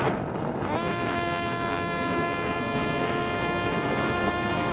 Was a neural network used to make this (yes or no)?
yes